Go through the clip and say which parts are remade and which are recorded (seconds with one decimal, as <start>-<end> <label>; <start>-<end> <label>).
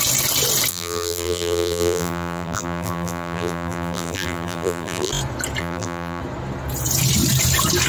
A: 0.0-0.7 recorded; 0.7-5.1 remade; 5.1-5.6 recorded; 5.6-6.2 remade; 6.2-7.9 recorded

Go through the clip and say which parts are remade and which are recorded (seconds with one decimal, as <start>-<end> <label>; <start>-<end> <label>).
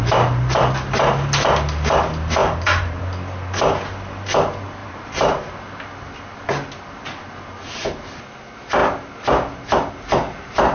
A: 0.0-2.4 recorded; 2.4-3.0 remade; 3.0-4.8 recorded; 4.8-5.6 remade; 5.6-10.7 recorded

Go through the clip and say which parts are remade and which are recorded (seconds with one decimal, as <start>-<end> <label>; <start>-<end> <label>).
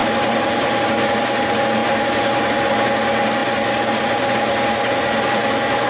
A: 0.0-0.8 remade; 0.8-1.8 recorded; 1.8-2.7 remade; 2.7-5.9 recorded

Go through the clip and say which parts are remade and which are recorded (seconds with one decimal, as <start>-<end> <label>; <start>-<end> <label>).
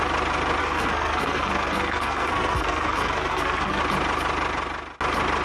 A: 0.0-0.6 recorded; 0.6-3.8 remade; 3.8-5.4 recorded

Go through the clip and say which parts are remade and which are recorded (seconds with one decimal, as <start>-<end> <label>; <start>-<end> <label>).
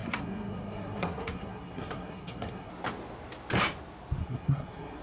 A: 0.0-2.7 remade; 2.7-4.2 recorded; 4.2-5.0 remade